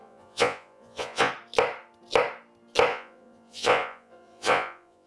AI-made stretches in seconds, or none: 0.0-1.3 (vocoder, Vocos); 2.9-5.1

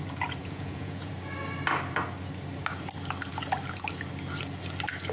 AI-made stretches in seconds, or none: 0.4-1.1 (vocoder, Vocos)

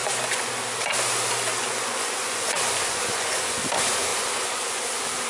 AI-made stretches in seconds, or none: 0.0-0.5 (vocoder, Vocos); 1.6-3.6; 4.1-4.8

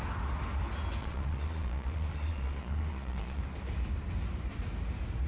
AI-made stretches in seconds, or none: 1.0-3.4 (vocoder, Vocos)

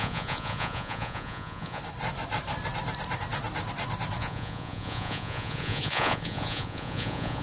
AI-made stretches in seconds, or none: 0.0-1.8 (vocoder, Vocos); 4.2-7.4

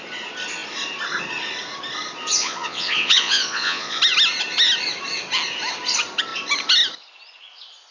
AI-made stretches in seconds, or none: 2.4-4.0 (vocoder, Vocos)